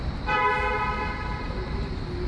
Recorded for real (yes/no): yes